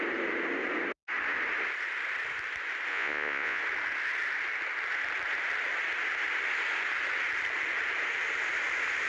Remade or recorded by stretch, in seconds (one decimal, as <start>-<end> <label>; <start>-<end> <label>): 0.0-2.9 recorded; 2.9-3.6 remade; 3.6-9.1 recorded